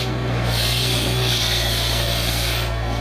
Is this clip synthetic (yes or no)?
yes